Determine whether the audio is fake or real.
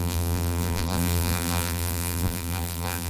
fake